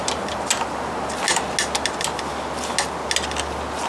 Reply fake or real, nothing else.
real